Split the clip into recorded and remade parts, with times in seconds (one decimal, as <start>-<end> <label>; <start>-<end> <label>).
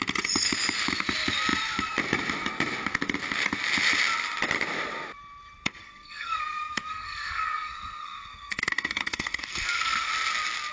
0.0-5.8 recorded; 5.8-10.1 remade; 10.1-10.7 recorded